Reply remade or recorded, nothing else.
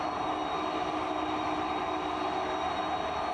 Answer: recorded